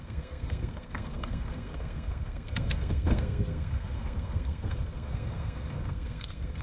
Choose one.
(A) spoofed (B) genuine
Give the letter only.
A